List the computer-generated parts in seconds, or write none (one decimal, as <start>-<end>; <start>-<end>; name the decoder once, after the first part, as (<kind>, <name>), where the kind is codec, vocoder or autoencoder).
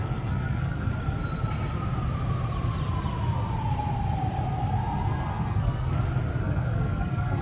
0.0-0.9 (codec, SNAC); 5.3-5.9; 6.4-7.4